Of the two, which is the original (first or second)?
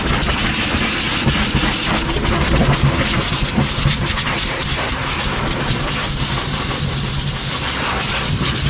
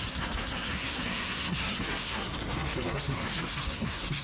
first